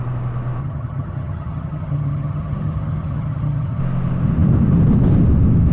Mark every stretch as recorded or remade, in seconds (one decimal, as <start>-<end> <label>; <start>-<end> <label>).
0.0-0.6 recorded; 0.6-3.8 remade; 3.8-5.7 recorded